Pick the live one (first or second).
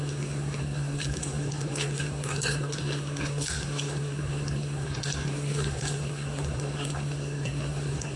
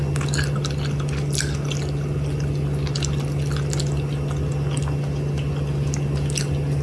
second